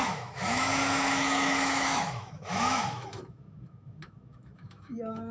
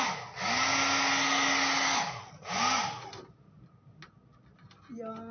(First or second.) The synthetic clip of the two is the first